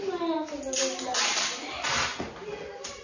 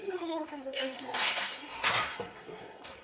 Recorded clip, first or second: first